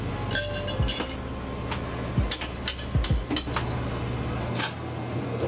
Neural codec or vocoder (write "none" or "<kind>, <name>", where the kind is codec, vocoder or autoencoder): none